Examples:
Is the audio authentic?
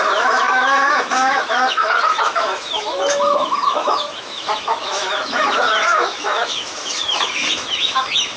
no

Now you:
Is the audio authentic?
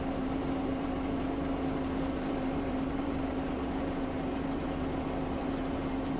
no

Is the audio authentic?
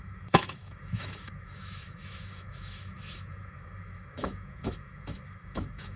no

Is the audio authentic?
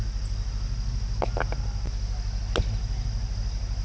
yes